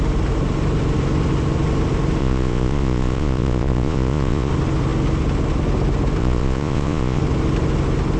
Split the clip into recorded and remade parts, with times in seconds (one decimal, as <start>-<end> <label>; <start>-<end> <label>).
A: 0.0-2.2 recorded; 2.2-4.5 remade; 4.5-6.2 recorded; 6.2-7.2 remade; 7.2-8.2 recorded